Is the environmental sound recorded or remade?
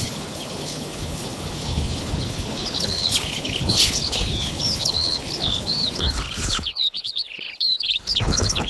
remade